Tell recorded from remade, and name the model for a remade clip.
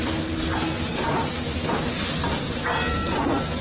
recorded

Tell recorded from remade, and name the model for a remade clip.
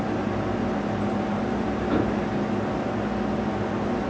recorded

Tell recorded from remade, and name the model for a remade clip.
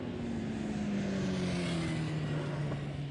recorded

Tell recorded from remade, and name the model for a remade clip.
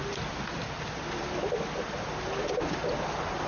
recorded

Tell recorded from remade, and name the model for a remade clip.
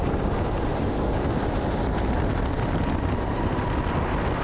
recorded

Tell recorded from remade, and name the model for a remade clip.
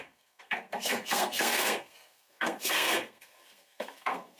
remade, codec, SNAC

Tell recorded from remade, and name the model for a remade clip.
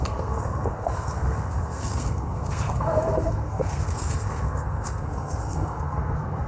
remade, codec, SNAC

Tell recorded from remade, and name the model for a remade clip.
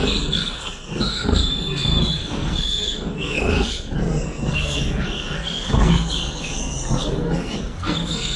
remade, codec, SNAC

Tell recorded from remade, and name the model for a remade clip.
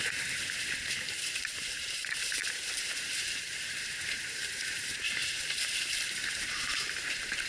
remade, vocoder, BigVGAN v2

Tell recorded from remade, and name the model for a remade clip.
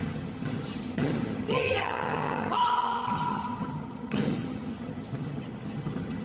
remade, vocoder, HiFi-GAN